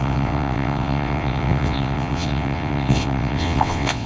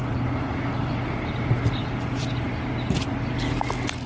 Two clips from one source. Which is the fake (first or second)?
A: first